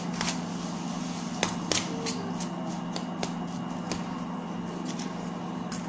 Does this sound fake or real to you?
real